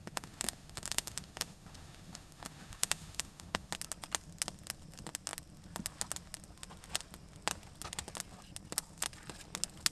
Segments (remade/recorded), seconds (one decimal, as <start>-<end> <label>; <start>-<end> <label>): 0.0-3.7 remade; 3.7-9.9 recorded